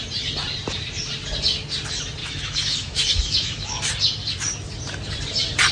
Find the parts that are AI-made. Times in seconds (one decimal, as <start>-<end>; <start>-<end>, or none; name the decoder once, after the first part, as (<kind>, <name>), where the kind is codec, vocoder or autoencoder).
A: 2.2-3.8 (autoencoder, DAC-VAE)